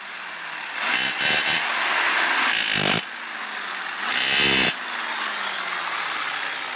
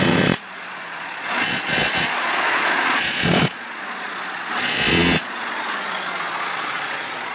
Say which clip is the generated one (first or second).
second